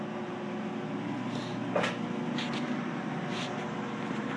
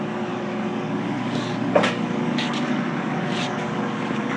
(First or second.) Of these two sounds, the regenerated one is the second